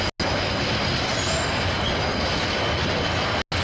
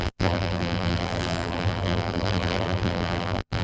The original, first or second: first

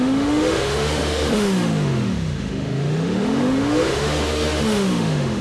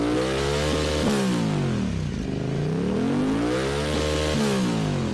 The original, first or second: second